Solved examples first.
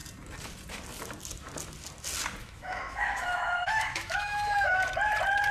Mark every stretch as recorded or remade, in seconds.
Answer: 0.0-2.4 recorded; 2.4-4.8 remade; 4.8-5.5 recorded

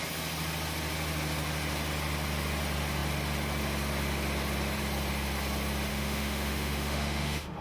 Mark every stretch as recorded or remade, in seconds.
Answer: 0.0-5.9 recorded; 5.9-7.6 remade

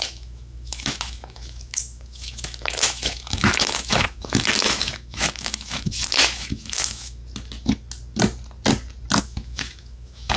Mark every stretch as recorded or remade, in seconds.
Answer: 0.0-7.2 remade; 7.2-9.2 recorded; 9.2-10.4 remade

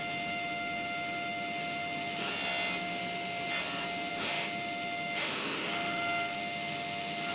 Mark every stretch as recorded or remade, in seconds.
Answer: 0.0-2.3 remade; 2.3-4.1 recorded; 4.1-7.3 remade